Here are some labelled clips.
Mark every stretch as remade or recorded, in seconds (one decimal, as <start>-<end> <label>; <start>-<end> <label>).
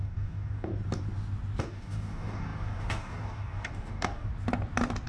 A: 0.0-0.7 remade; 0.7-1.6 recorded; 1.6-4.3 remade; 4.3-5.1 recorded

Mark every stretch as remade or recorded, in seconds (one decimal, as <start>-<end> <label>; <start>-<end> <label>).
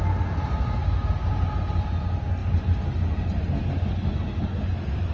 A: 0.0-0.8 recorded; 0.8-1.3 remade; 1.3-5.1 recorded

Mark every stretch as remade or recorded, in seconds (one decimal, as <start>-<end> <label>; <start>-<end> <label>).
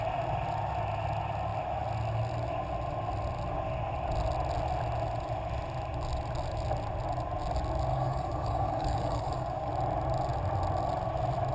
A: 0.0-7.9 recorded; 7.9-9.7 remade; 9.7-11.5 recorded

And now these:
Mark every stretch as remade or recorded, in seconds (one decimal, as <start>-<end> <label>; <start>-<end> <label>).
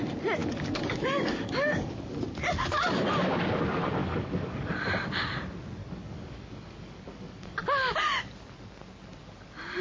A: 0.0-0.4 recorded; 0.4-2.1 remade; 2.1-4.0 recorded; 4.0-4.7 remade; 4.7-5.8 recorded; 5.8-7.6 remade; 7.6-9.8 recorded